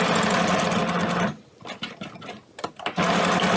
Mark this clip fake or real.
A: real